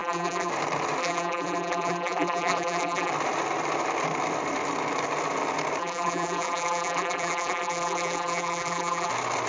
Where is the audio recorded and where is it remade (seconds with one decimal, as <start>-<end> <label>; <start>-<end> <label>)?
0.0-0.5 remade; 0.5-1.0 recorded; 1.0-3.1 remade; 3.1-5.8 recorded; 5.8-9.1 remade; 9.1-9.5 recorded

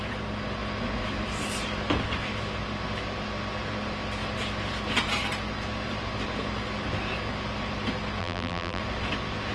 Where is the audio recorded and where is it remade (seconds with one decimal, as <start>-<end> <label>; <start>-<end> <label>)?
0.0-8.2 recorded; 8.2-8.8 remade; 8.8-9.5 recorded

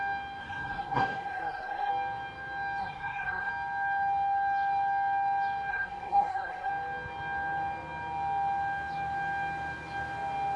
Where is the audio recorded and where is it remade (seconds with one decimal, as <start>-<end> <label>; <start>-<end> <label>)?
0.0-0.4 recorded; 0.4-1.9 remade; 1.9-2.8 recorded; 2.8-3.5 remade; 3.5-5.7 recorded; 5.7-6.7 remade; 6.7-10.6 recorded

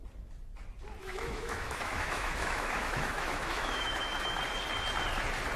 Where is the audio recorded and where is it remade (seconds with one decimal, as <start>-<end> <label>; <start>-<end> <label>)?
0.0-1.0 recorded; 1.0-4.4 remade; 4.4-5.6 recorded

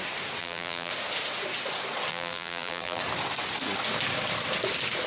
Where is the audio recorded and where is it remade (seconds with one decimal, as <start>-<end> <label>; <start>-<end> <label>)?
0.0-0.4 recorded; 0.4-0.9 remade; 0.9-2.1 recorded; 2.1-3.0 remade; 3.0-5.1 recorded

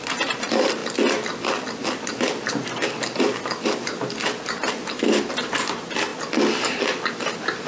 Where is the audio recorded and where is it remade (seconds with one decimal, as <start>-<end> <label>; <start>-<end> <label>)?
0.0-0.8 remade; 0.8-3.9 recorded; 3.9-6.1 remade; 6.1-7.1 recorded; 7.1-7.7 remade